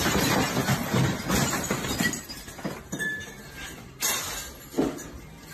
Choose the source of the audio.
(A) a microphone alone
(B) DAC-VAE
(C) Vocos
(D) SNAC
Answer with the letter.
A